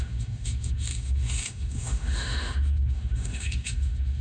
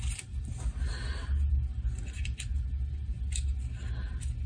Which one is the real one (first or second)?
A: second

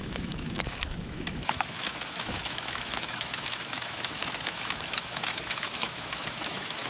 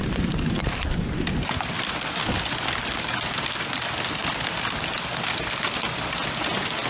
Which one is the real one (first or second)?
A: second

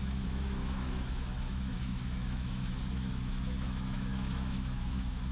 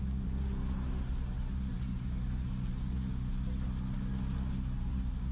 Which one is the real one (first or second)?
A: second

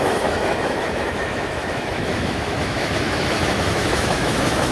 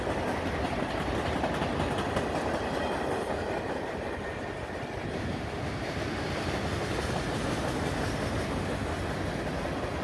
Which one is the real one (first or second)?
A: second